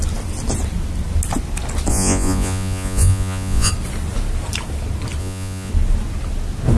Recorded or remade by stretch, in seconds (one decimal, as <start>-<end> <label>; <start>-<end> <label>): 0.0-1.9 recorded; 1.9-3.7 remade; 3.7-5.2 recorded; 5.2-5.7 remade; 5.7-6.8 recorded